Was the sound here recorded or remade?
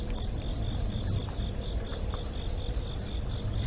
recorded